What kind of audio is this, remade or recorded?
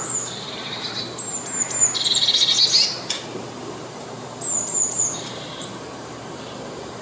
remade